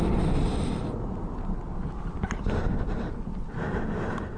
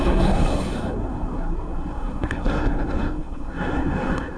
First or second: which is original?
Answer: first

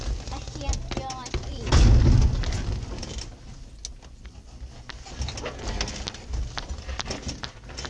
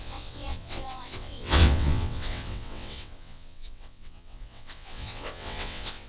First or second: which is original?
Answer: first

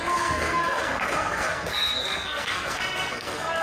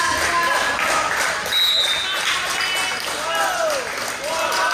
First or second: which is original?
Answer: second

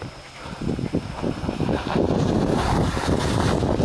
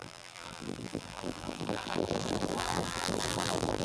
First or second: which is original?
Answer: first